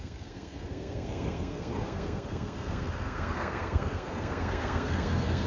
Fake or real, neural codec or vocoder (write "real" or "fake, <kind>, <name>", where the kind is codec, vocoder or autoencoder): fake, codec, SNAC